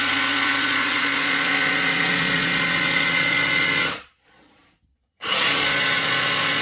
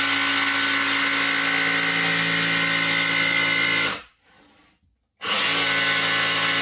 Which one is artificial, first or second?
first